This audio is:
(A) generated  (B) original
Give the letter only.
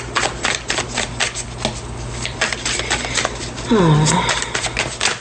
B